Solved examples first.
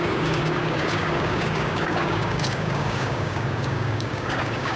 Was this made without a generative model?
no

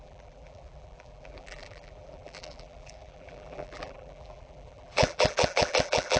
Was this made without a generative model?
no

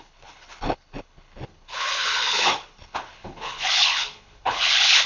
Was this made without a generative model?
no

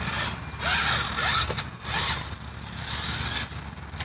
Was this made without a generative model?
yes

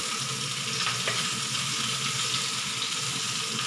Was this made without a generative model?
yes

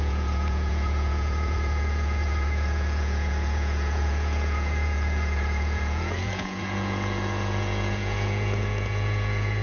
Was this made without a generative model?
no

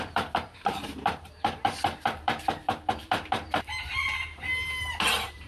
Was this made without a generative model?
no